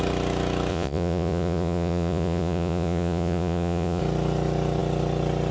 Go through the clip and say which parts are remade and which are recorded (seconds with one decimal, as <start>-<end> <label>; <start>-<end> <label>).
0.0-0.7 recorded; 0.7-4.0 remade; 4.0-5.5 recorded